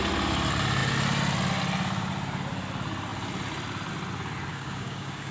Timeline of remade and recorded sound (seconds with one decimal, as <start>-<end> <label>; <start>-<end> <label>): 0.0-4.5 recorded; 4.5-5.3 remade